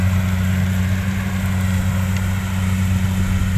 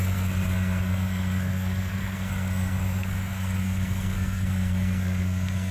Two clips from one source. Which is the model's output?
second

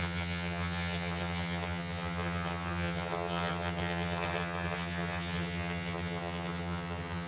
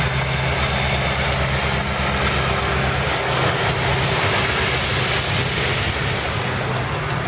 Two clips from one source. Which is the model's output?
first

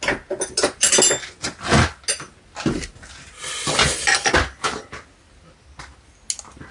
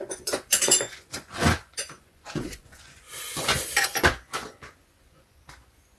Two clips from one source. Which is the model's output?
second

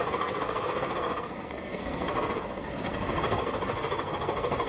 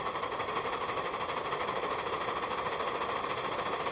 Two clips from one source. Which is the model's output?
first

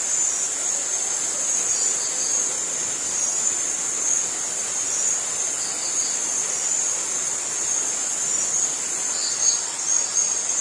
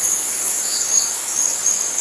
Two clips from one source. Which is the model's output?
second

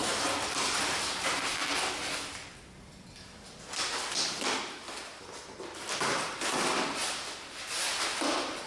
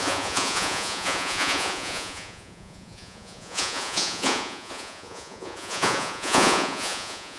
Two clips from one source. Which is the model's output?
second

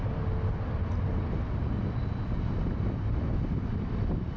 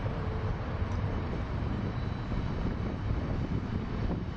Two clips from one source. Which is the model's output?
second